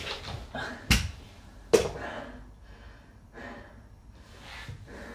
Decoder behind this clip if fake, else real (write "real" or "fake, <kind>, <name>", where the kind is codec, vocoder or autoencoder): real